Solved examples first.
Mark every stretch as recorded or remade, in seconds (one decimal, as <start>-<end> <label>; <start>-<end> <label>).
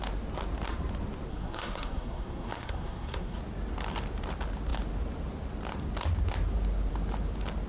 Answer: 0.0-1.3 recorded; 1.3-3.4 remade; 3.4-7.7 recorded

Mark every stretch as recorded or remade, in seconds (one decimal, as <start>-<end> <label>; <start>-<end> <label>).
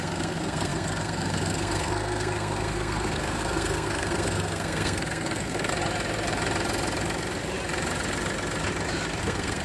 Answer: 0.0-5.7 remade; 5.7-9.2 recorded; 9.2-9.6 remade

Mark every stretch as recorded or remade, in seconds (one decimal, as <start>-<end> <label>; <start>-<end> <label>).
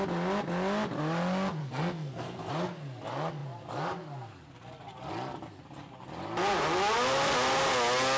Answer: 0.0-1.6 recorded; 1.6-2.5 remade; 2.5-8.2 recorded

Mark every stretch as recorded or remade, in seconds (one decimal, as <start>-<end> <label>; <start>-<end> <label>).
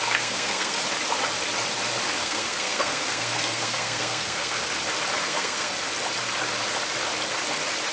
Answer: 0.0-0.8 remade; 0.8-2.2 recorded; 2.2-4.6 remade; 4.6-5.2 recorded; 5.2-5.7 remade; 5.7-7.9 recorded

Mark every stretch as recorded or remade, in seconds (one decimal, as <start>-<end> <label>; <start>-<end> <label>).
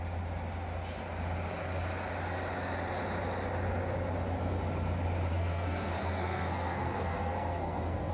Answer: 0.0-5.3 recorded; 5.3-8.1 remade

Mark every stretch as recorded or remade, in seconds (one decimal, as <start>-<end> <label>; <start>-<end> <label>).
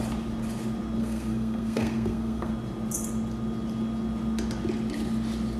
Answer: 0.0-1.0 recorded; 1.0-2.5 remade; 2.5-5.6 recorded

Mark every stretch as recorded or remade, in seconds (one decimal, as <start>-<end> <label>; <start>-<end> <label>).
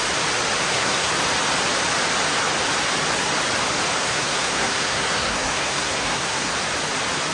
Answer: 0.0-0.6 recorded; 0.6-1.1 remade; 1.1-4.0 recorded; 4.0-6.5 remade; 6.5-7.3 recorded